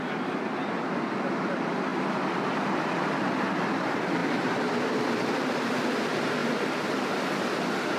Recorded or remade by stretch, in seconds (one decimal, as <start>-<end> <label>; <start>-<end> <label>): 0.0-6.4 remade; 6.4-7.4 recorded; 7.4-8.0 remade